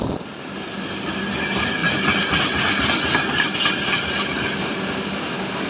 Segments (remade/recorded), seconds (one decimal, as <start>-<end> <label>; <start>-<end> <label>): 0.0-5.7 recorded